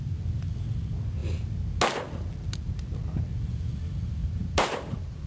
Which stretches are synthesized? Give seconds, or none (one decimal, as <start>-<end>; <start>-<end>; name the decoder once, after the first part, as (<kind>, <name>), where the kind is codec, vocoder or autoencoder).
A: 4.2-5.3 (vocoder, BigVGAN v2)